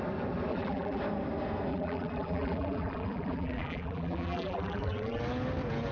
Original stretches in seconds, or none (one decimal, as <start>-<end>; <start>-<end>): 0.0-0.5; 1.0-1.7; 5.2-5.9